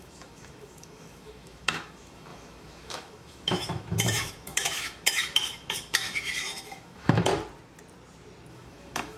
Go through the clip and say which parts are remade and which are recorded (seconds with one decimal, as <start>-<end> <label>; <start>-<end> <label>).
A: 0.0-7.3 remade; 7.3-8.5 recorded; 8.5-9.2 remade